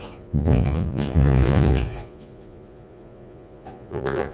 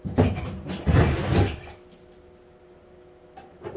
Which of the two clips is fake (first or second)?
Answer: first